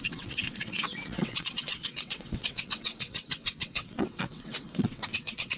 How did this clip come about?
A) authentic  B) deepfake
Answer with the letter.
B